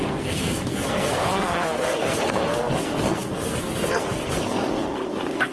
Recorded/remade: remade